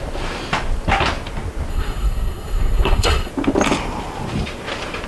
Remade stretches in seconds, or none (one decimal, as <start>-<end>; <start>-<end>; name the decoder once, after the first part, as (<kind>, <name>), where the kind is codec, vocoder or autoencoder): 1.7-3.3 (codec, SNAC)